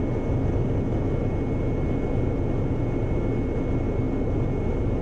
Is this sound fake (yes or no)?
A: no